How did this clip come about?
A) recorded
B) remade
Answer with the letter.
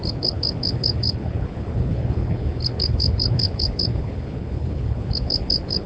B